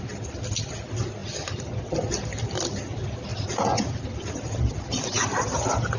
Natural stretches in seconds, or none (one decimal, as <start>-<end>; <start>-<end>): 0.0-6.0